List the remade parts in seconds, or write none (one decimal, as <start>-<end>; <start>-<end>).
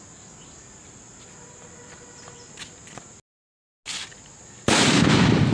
none